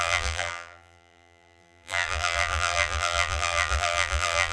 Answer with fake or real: fake